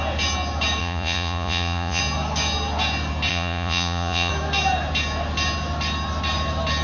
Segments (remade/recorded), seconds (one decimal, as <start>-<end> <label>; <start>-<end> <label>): 0.0-0.8 recorded; 0.8-2.0 remade; 2.0-3.3 recorded; 3.3-4.3 remade; 4.3-6.8 recorded